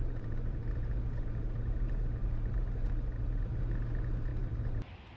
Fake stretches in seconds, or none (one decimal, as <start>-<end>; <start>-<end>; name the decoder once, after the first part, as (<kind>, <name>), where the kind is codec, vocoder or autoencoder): 0.0-0.6 (vocoder, BigVGAN v2); 2.2-3.6; 4.3-4.8